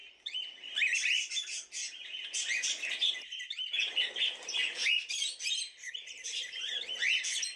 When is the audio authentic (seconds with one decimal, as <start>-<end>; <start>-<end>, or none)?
1.3-2.4; 3.8-7.6

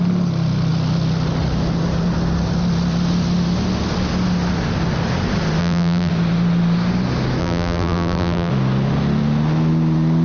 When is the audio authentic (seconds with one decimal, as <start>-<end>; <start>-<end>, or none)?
0.0-5.6; 6.1-7.4; 8.5-10.2

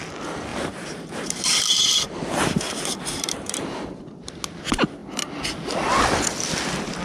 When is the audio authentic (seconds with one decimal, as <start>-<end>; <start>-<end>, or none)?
0.0-0.5; 4.3-7.0

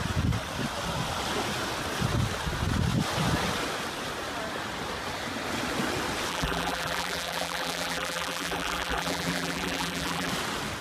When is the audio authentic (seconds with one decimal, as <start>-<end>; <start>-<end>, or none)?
0.0-6.3; 10.3-10.8

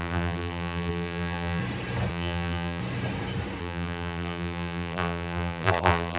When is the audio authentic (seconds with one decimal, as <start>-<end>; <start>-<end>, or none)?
1.6-2.1; 2.8-3.6

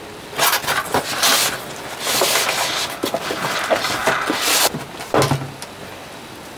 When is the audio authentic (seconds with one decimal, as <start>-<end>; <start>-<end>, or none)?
0.0-4.0; 4.9-6.6

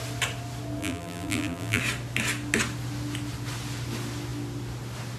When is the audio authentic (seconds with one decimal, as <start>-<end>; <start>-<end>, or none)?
0.0-0.8; 1.8-5.2